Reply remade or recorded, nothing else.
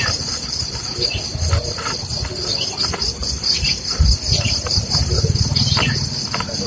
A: recorded